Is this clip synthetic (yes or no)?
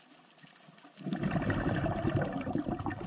no